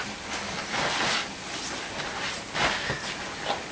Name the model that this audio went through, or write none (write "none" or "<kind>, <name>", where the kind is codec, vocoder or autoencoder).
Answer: none